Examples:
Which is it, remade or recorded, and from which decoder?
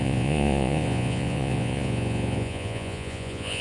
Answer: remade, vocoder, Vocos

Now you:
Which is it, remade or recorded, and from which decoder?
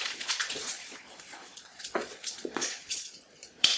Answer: remade, vocoder, Vocos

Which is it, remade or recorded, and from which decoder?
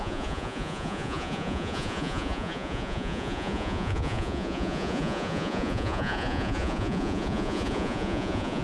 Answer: remade, vocoder, Vocos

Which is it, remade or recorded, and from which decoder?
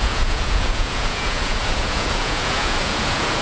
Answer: remade, vocoder, Vocos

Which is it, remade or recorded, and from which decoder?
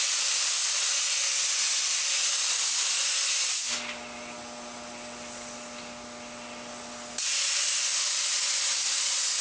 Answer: recorded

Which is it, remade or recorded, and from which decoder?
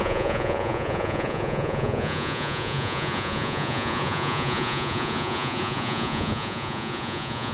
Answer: remade, vocoder, Vocos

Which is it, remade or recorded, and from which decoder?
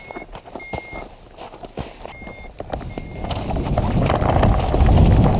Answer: recorded